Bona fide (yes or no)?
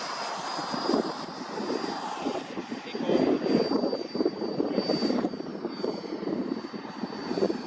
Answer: yes